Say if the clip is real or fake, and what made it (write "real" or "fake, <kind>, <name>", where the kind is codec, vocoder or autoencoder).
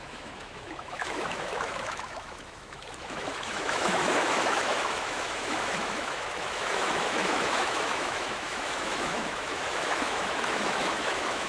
fake, autoencoder, DAC-VAE